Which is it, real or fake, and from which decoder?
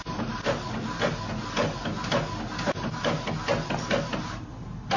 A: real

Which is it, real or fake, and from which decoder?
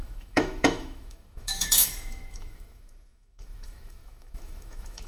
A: fake, autoencoder, DAC-VAE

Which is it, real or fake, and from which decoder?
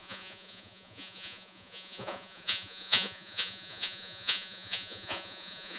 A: fake, vocoder, Vocos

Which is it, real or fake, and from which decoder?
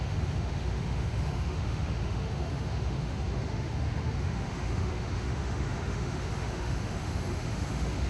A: fake, autoencoder, DAC-VAE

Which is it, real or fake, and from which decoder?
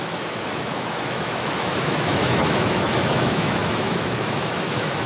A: fake, autoencoder, DAC-VAE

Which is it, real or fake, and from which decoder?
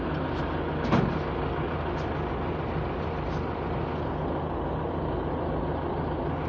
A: real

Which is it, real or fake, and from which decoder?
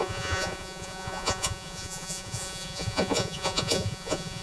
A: fake, vocoder, Vocos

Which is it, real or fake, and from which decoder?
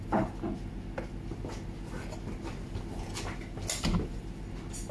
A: real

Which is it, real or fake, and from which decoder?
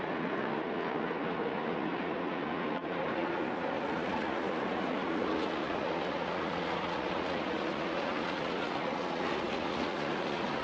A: fake, vocoder, Vocos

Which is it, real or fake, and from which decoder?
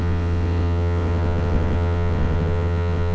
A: fake, vocoder, WaveNeXt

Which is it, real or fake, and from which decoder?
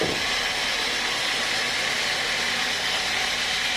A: real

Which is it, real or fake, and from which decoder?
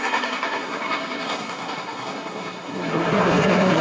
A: fake, codec, SNAC